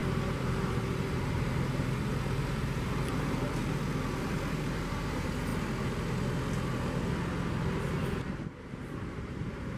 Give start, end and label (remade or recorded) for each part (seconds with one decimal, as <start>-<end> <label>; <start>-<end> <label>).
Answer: 0.0-3.6 remade; 3.6-4.2 recorded; 4.2-5.5 remade; 5.5-8.6 recorded; 8.6-9.8 remade